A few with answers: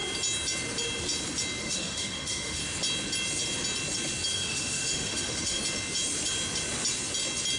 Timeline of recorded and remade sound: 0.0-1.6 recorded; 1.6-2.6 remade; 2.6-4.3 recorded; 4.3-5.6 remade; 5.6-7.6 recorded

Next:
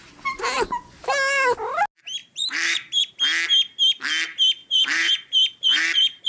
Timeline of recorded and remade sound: 0.0-2.2 recorded; 2.2-3.0 remade; 3.0-4.6 recorded; 4.6-6.3 remade

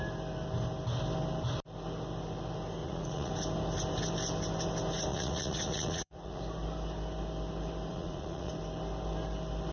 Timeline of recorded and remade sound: 0.0-2.8 recorded; 2.8-3.3 remade; 3.3-5.1 recorded; 5.1-6.4 remade; 6.4-7.9 recorded; 7.9-8.5 remade; 8.5-9.7 recorded

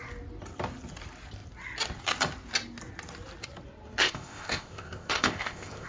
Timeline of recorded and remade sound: 0.0-4.0 recorded; 4.0-5.9 remade

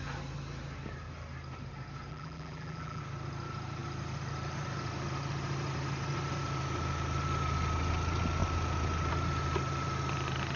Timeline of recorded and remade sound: 0.0-2.1 recorded; 2.1-3.0 remade; 3.0-10.6 recorded